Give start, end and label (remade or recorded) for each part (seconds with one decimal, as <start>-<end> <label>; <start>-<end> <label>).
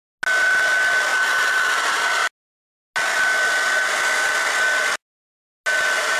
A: 0.0-1.1 recorded; 1.1-1.8 remade; 1.8-6.2 recorded